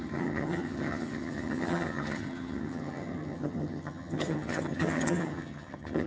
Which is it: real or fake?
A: fake